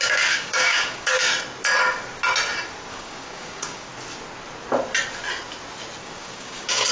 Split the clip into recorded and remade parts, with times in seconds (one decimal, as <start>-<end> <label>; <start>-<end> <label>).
0.0-1.3 remade; 1.3-2.9 recorded; 2.9-3.9 remade; 3.9-6.0 recorded; 6.0-6.9 remade